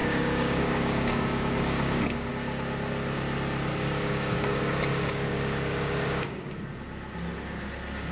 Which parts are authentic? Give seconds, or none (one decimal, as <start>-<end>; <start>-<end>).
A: 2.3-3.7; 6.5-8.1

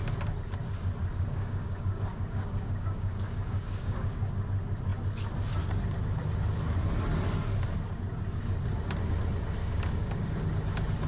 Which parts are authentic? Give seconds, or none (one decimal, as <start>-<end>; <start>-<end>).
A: 0.0-1.1; 4.2-9.6; 10.2-11.1

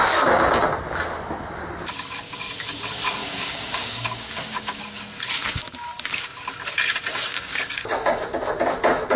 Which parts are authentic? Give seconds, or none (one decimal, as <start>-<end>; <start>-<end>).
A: 0.0-3.2; 4.8-7.1; 8.3-9.2

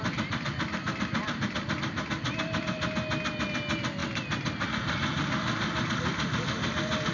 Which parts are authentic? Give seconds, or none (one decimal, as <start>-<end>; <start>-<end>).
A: 0.0-7.1

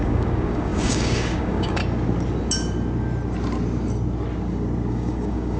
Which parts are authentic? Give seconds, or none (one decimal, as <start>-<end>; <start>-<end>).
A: 1.8-4.9

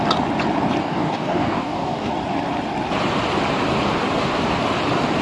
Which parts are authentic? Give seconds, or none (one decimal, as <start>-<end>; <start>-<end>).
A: 0.0-0.8; 2.1-5.2

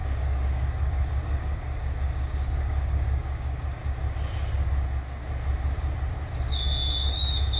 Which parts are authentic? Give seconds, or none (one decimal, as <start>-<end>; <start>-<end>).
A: 3.8-6.5

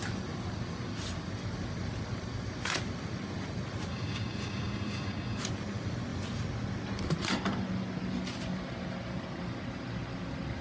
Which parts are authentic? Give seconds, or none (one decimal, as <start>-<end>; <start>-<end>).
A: 0.0-3.9; 5.4-10.6